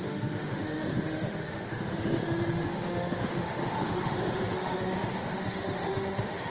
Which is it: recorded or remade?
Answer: remade